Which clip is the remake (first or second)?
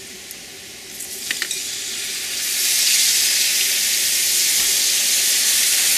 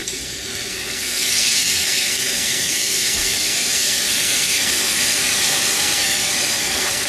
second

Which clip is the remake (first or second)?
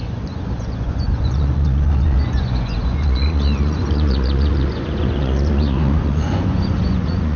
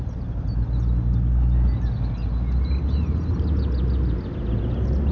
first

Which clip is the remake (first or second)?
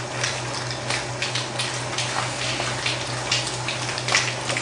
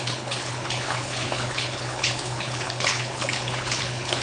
second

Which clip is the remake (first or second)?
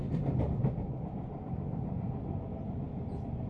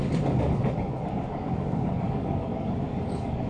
second